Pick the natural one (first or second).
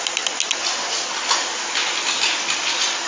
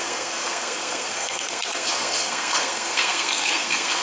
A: first